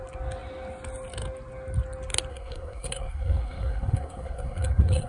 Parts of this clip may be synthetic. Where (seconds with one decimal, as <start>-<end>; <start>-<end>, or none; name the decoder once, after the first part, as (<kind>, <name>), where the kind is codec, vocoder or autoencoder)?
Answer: 2.3-5.1 (codec, SNAC)